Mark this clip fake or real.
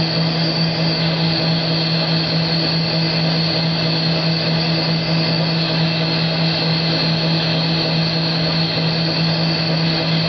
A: real